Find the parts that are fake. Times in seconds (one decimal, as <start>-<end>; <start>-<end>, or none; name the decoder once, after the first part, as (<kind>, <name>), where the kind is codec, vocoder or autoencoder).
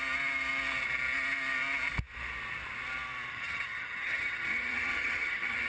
3.3-5.7 (vocoder, HiFi-GAN)